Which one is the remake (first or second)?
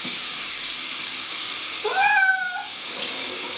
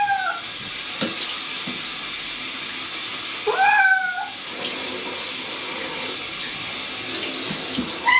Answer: first